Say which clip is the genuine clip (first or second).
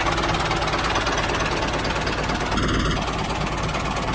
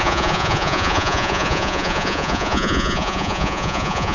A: first